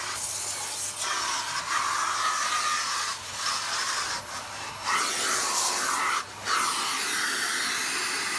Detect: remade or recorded recorded